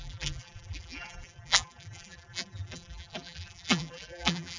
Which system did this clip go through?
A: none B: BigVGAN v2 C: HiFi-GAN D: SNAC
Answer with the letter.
B